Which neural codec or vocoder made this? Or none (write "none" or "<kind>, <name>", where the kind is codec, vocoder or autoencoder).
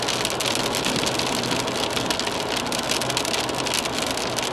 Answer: none